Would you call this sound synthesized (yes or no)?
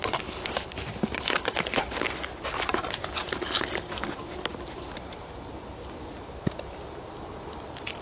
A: no